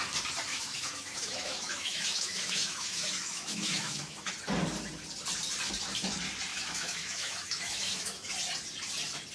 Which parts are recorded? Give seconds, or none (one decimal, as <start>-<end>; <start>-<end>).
0.0-0.5; 4.3-6.5; 8.3-9.3